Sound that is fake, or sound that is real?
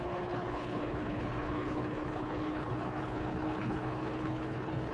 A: fake